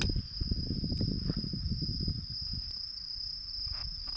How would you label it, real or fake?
real